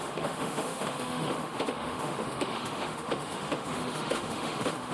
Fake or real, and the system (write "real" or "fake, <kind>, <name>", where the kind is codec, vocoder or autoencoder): fake, autoencoder, DAC-VAE